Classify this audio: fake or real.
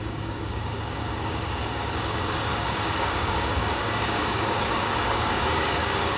fake